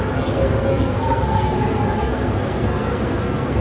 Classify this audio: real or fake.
fake